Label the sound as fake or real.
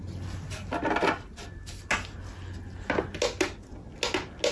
real